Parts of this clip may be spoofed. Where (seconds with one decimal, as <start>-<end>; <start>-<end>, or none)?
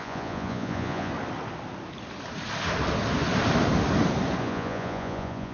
0.0-1.1; 4.4-5.5